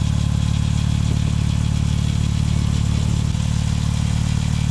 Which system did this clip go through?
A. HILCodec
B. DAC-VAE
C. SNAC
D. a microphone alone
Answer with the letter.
D